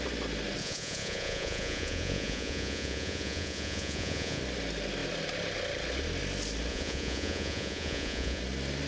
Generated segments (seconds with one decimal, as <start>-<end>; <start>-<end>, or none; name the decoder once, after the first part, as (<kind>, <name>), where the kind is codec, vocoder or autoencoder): 0.6-4.4 (vocoder, Vocos); 6.7-8.4